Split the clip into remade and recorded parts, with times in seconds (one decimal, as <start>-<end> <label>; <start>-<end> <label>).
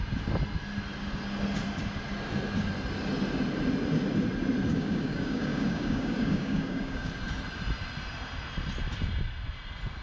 0.0-4.7 recorded; 4.7-7.1 remade; 7.1-10.0 recorded